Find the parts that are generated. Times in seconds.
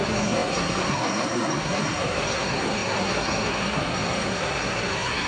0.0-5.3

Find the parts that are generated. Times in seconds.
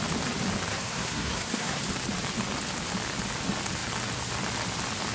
0.7-1.8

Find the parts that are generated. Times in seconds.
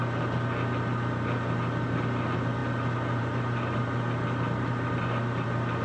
none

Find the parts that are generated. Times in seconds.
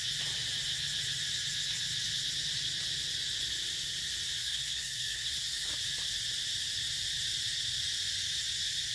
4.4-5.7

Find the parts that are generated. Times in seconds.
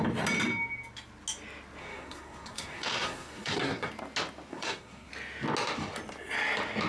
1.8-3.9; 4.5-5.1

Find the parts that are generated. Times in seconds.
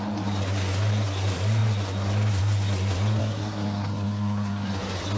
3.2-4.7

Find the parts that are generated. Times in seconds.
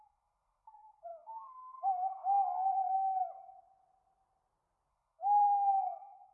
0.0-2.2; 4.9-6.3